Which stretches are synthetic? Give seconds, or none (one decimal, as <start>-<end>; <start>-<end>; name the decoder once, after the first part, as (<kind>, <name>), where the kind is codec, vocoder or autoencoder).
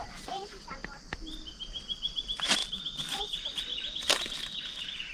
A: 0.0-0.8 (vocoder, BigVGAN v2); 2.2-2.6; 3.2-3.7